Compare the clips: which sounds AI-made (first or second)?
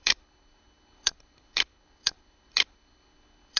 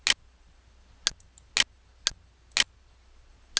first